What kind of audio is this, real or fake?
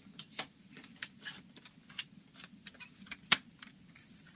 real